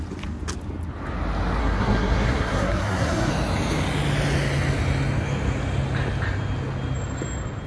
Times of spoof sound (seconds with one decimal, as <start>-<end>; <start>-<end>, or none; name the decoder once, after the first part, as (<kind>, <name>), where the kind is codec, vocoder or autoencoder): 1.6-3.3 (codec, SNAC)